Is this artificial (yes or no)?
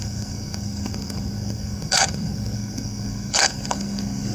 yes